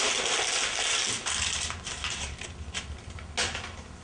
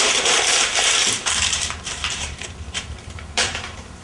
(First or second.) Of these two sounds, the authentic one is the first